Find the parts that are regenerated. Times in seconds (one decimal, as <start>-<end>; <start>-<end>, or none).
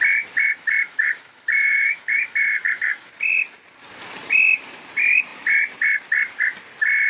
0.8-3.1